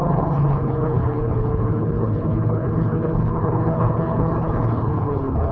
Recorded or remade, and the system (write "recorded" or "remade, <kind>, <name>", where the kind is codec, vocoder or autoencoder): remade, codec, HILCodec